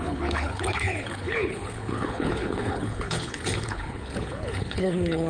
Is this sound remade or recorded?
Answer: remade